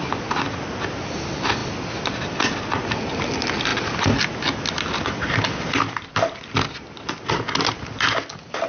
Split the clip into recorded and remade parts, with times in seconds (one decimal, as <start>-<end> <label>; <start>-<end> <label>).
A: 0.0-8.7 recorded